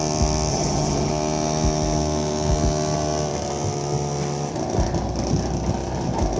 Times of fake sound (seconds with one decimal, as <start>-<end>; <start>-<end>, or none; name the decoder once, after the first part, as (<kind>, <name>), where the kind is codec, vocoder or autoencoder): 0.5-1.1 (vocoder, HiFi-GAN)